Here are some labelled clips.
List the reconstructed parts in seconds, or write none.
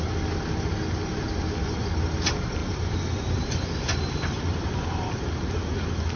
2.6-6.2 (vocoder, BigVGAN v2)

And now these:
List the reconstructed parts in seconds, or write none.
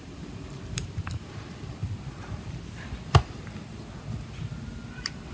0.0-1.8 (vocoder, BigVGAN v2)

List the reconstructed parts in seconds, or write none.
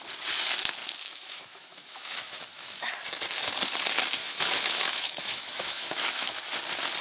0.8-2.9 (autoencoder, DAC-VAE); 4.2-6.4